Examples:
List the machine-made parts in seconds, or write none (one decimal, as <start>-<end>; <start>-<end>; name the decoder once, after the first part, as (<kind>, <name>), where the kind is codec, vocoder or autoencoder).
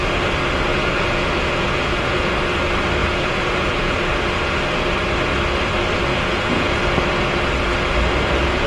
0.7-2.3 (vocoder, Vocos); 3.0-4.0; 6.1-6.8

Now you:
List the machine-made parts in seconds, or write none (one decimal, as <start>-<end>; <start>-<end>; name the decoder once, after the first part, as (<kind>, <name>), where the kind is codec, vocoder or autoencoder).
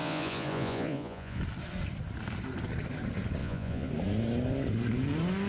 0.0-1.4 (vocoder, Vocos); 3.4-3.9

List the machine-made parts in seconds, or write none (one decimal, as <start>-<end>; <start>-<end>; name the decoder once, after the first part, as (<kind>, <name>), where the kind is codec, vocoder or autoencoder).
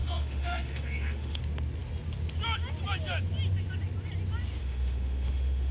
0.0-1.4 (autoencoder, DAC-VAE); 4.6-5.7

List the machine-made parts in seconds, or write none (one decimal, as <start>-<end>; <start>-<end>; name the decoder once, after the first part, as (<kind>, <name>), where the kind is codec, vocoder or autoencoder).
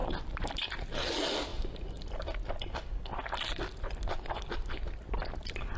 0.0-0.7 (vocoder, BigVGAN v2)